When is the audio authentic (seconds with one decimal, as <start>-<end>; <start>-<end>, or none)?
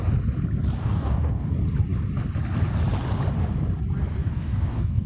0.0-0.8; 1.5-4.2